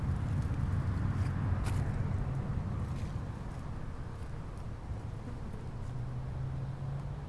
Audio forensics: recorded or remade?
recorded